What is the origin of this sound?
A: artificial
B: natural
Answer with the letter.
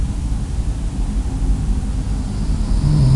B